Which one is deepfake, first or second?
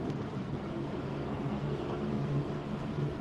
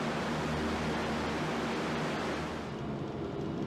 first